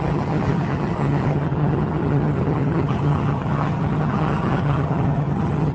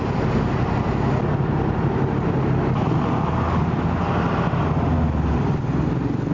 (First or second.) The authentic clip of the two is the second